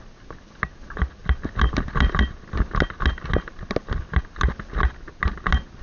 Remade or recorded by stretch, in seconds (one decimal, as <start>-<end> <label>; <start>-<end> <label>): 0.0-5.8 recorded